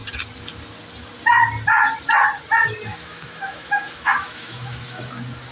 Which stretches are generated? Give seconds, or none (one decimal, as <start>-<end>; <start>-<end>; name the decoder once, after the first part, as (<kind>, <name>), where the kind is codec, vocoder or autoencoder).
2.9-5.1 (autoencoder, DAC-VAE)